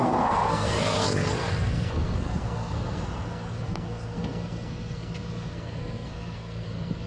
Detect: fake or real fake